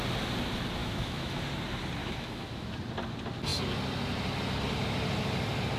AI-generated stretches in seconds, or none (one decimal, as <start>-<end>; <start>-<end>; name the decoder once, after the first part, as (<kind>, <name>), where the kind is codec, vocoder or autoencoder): 0.8-1.4 (autoencoder, DAC-VAE); 2.0-2.7